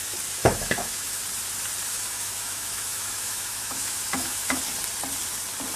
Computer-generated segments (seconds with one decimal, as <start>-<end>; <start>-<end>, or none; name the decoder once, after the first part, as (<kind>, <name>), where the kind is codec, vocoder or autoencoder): 0.4-1.2 (autoencoder, DAC-VAE); 1.9-4.6